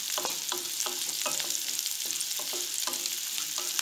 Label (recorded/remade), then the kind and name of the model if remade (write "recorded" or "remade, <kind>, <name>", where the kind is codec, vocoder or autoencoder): recorded